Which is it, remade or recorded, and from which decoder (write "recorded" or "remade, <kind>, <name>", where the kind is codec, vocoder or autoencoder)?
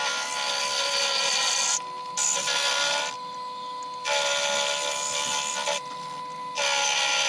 recorded